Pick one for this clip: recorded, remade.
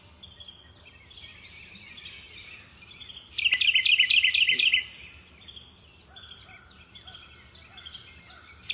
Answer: recorded